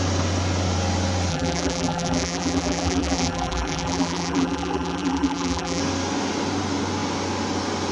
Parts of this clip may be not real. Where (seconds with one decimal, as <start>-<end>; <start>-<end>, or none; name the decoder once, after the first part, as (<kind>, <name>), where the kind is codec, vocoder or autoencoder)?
1.3-5.8 (vocoder, BigVGAN v2)